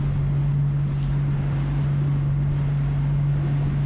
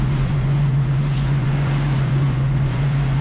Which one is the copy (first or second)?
second